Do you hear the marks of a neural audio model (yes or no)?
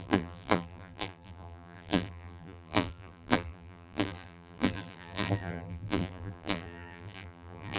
yes